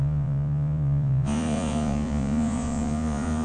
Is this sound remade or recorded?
remade